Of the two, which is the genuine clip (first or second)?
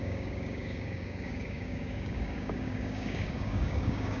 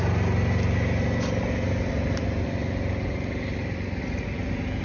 second